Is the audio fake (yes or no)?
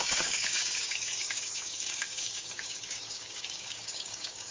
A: yes